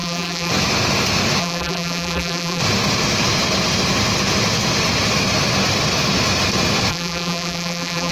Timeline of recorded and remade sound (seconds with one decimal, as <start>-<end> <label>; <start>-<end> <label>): 0.0-0.5 remade; 0.5-1.4 recorded; 1.4-2.6 remade; 2.6-6.9 recorded; 6.9-8.1 remade